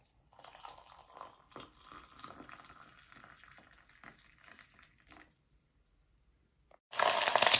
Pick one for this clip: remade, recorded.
recorded